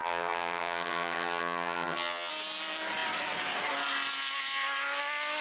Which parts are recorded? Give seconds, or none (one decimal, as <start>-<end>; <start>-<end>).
2.3-5.4